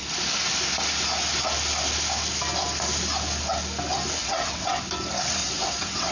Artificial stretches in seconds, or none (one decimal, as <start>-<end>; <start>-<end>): 4.2-4.8; 5.4-6.1